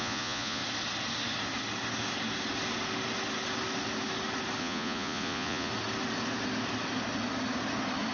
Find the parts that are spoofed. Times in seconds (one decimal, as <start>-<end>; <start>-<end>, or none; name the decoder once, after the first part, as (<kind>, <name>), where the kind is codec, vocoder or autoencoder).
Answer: 0.0-0.6 (vocoder, Vocos); 4.6-5.7